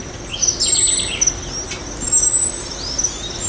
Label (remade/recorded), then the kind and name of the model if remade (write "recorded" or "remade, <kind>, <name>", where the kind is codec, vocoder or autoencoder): recorded